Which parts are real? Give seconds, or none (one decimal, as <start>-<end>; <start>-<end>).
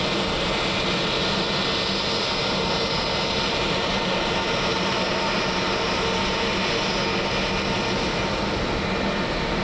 0.0-9.6